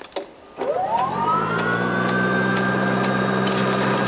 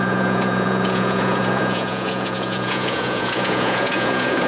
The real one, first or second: first